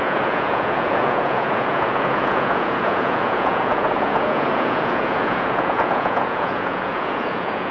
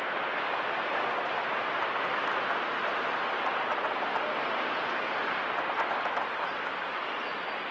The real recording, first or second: second